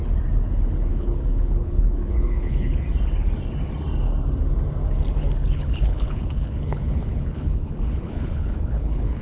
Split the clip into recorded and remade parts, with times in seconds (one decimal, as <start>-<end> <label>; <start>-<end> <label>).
0.0-0.9 recorded; 0.9-2.8 remade; 2.8-5.4 recorded; 5.4-9.2 remade